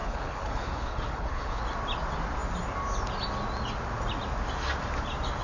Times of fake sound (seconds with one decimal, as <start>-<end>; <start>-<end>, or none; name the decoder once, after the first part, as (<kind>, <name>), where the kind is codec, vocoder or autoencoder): 0.0-1.6 (codec, HILCodec)